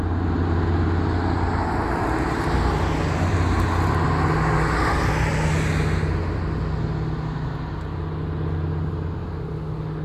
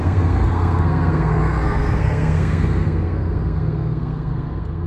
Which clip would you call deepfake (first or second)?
second